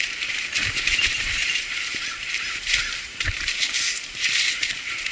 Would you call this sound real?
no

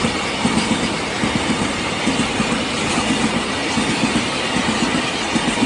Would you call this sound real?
yes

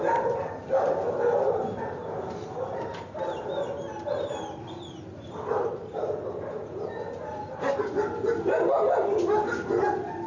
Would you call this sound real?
yes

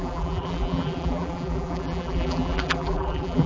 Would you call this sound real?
no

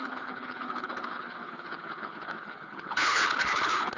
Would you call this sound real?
no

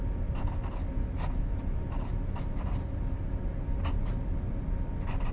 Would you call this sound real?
yes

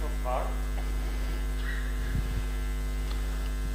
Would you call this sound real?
yes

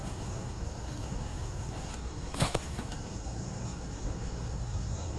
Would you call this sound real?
no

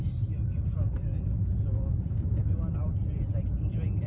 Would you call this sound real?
yes